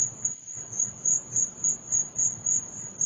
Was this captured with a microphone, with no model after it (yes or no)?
yes